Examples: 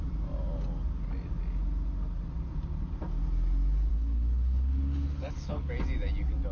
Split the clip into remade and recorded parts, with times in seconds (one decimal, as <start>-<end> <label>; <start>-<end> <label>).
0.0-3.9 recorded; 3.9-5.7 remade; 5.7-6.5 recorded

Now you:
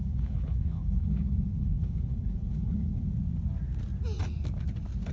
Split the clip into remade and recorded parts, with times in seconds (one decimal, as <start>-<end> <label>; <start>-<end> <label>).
0.0-3.0 remade; 3.0-5.1 recorded

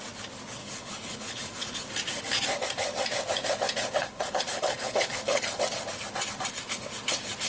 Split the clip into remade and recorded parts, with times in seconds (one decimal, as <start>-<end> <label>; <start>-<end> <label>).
0.0-0.6 recorded; 0.6-1.8 remade; 1.8-4.0 recorded; 4.0-5.6 remade; 5.6-7.5 recorded

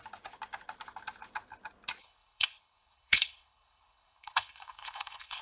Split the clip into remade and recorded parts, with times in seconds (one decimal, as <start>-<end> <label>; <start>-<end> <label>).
0.0-2.0 recorded; 2.0-5.4 remade

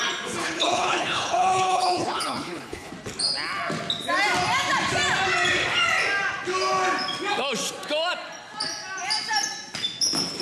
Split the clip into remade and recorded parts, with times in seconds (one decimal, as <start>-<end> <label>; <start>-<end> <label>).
0.0-0.4 recorded; 0.4-2.9 remade; 2.9-10.4 recorded

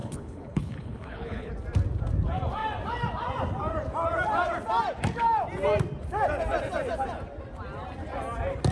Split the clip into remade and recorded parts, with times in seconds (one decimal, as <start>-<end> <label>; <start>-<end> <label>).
0.0-1.5 remade; 1.5-8.7 recorded

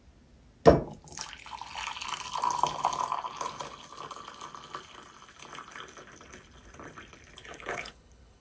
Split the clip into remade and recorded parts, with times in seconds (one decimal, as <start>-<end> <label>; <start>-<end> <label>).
0.0-7.4 recorded; 7.4-8.4 remade

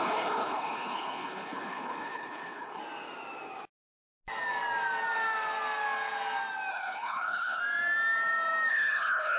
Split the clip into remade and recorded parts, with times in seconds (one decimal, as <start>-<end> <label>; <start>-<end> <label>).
0.0-2.8 remade; 2.8-6.7 recorded; 6.7-7.6 remade; 7.6-8.7 recorded; 8.7-9.4 remade